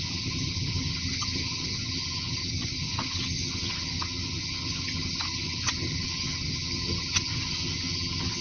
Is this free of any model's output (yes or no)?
no